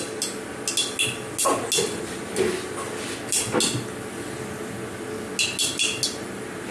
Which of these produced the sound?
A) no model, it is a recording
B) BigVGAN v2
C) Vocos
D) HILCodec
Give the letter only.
A